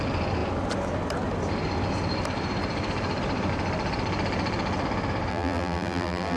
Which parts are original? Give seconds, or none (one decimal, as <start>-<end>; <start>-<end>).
0.0-5.3